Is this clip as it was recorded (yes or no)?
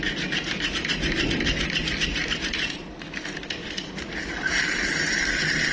yes